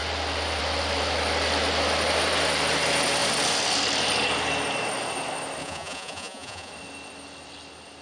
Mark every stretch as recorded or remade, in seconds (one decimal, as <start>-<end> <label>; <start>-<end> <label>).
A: 0.0-5.6 recorded; 5.6-6.7 remade; 6.7-8.0 recorded